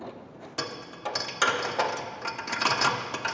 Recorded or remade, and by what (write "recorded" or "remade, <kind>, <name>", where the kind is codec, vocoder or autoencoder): recorded